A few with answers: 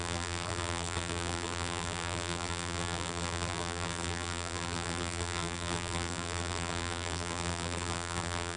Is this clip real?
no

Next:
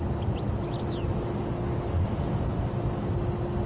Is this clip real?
yes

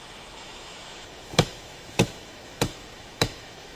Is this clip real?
no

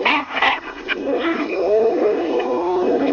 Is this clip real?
no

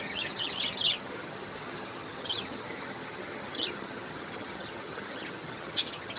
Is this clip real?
no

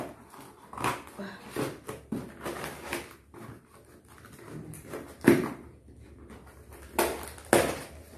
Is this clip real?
yes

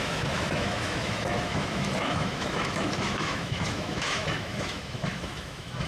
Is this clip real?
no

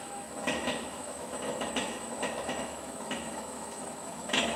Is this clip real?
no